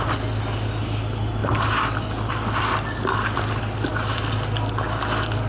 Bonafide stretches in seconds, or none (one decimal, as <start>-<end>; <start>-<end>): 0.0-5.5